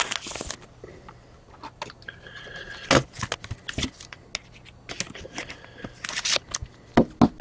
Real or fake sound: real